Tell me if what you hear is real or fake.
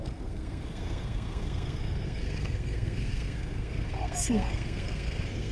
fake